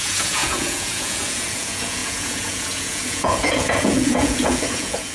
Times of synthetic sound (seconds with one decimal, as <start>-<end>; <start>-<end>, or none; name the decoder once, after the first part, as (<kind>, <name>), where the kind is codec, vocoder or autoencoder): 0.0-5.1 (vocoder, Vocos)